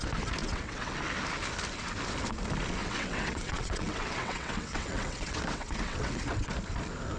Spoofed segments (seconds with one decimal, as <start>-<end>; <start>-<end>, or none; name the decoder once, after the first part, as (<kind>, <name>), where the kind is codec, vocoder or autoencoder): 0.4-0.9 (vocoder, WaveNeXt); 2.8-6.5